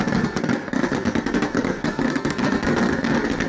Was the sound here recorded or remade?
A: remade